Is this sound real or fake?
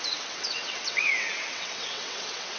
fake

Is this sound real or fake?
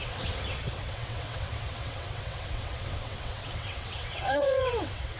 fake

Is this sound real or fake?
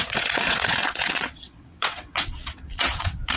fake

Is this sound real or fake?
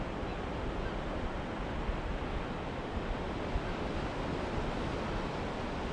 real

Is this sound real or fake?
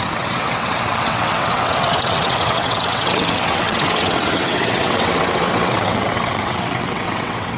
fake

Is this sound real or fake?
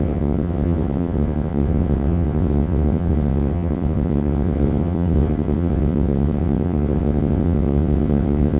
fake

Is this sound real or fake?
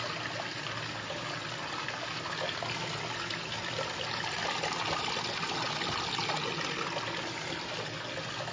real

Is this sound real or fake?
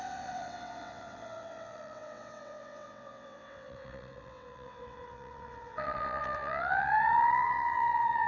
fake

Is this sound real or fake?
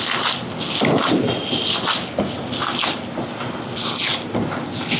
real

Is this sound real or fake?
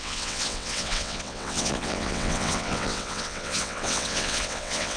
fake